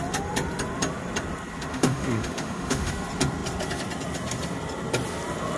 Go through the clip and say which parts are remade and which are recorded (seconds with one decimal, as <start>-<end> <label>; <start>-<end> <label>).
0.0-1.7 recorded; 1.7-2.9 remade; 2.9-5.6 recorded